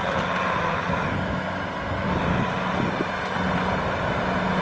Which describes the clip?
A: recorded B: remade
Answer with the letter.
A